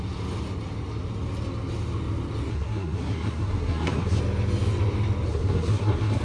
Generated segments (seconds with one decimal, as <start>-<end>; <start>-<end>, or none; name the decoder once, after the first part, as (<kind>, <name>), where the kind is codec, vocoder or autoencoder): 2.5-4.2 (codec, SNAC); 5.3-6.2